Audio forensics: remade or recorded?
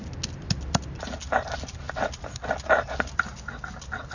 recorded